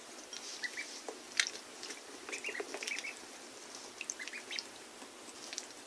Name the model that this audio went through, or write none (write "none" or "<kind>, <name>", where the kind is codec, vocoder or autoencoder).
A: none